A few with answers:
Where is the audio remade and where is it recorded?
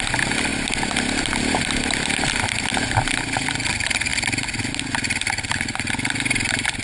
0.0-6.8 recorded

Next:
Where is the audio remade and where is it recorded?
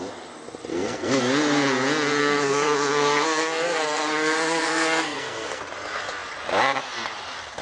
0.0-0.7 recorded; 0.7-1.2 remade; 1.2-2.2 recorded; 2.2-5.6 remade; 5.6-7.6 recorded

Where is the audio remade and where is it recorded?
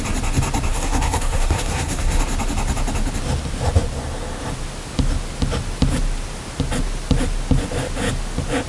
0.0-0.7 recorded; 0.7-2.2 remade; 2.2-8.7 recorded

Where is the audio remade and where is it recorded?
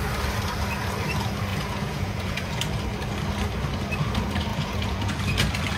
0.0-1.5 recorded; 1.5-2.5 remade; 2.5-4.5 recorded; 4.5-5.2 remade; 5.2-5.8 recorded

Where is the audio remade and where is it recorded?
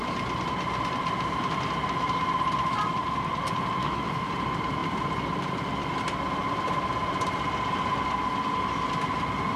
0.0-3.8 recorded; 3.8-4.3 remade; 4.3-9.6 recorded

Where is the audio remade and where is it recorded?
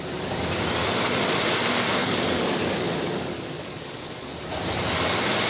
0.0-2.0 recorded; 2.0-4.3 remade; 4.3-5.5 recorded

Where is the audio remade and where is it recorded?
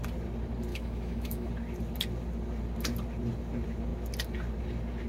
0.0-0.7 recorded; 0.7-1.5 remade; 1.5-5.1 recorded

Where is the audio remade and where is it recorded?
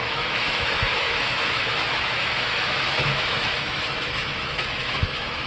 0.0-5.5 remade